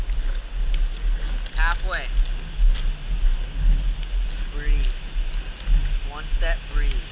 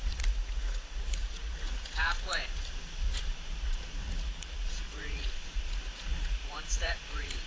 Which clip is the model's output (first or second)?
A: second